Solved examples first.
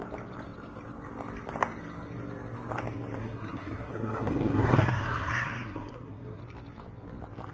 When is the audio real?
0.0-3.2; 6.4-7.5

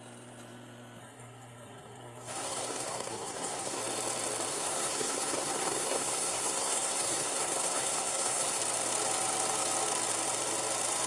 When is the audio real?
0.0-1.0; 3.8-4.5; 8.6-11.1

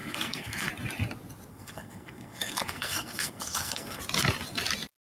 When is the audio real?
0.7-1.5; 4.0-5.2